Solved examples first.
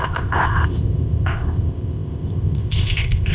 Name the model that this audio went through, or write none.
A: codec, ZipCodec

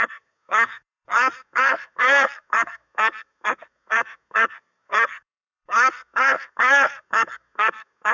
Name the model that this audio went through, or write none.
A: codec, SNAC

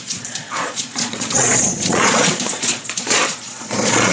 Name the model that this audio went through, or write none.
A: vocoder, Vocos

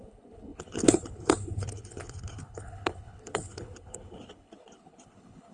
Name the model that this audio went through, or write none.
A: codec, HILCodec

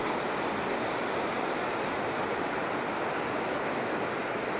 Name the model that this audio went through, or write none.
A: none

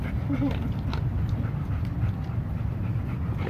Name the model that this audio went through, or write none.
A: vocoder, BigVGAN v2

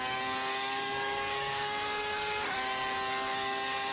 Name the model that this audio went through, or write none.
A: codec, DAC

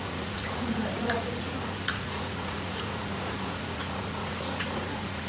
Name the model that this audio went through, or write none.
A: vocoder, Vocos